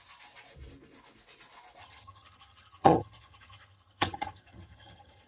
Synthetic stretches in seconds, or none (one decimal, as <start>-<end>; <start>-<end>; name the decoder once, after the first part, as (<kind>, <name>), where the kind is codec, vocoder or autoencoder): 1.8-5.3 (vocoder, HiFi-GAN)